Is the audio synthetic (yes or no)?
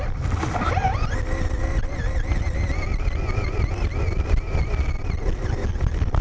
no